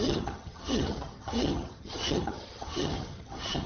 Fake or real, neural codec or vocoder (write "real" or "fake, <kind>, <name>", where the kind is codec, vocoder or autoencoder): fake, vocoder, HiFi-GAN